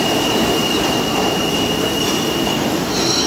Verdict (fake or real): fake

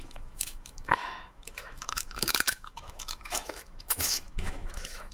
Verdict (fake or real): fake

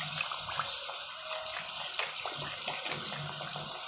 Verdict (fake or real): real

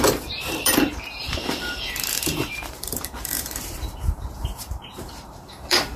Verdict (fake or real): fake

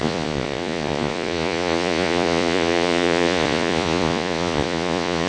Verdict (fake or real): fake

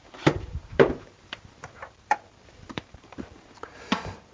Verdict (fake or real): fake